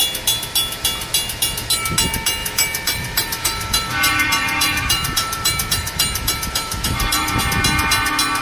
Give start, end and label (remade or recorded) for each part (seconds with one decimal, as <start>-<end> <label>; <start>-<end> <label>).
0.0-2.4 recorded; 2.4-7.4 remade; 7.4-8.4 recorded

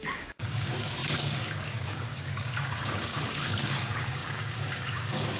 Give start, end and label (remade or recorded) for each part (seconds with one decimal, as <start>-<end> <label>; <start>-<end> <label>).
0.0-5.4 remade

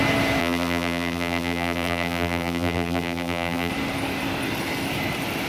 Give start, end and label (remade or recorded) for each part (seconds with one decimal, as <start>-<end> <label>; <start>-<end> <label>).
0.0-0.4 recorded; 0.4-3.7 remade; 3.7-5.5 recorded

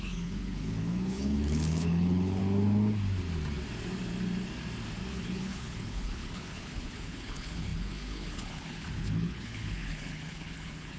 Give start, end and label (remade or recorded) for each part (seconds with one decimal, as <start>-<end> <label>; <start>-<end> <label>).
0.0-2.4 remade; 2.4-5.1 recorded; 5.1-11.0 remade

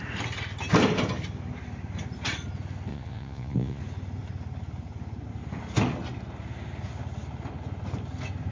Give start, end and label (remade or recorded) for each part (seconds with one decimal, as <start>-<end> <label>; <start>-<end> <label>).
0.0-2.9 recorded; 2.9-3.8 remade; 3.8-8.5 recorded